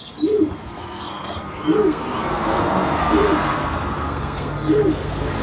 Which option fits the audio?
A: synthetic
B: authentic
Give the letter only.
A